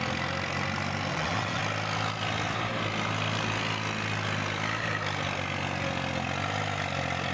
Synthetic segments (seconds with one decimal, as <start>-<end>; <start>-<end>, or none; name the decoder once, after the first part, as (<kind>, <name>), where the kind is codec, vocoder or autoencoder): 1.1-1.6 (vocoder, WaveNeXt)